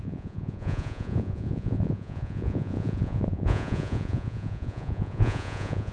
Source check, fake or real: fake